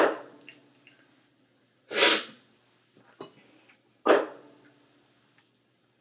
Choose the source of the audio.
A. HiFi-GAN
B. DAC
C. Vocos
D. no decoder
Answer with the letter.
D